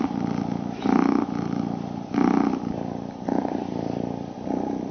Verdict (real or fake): real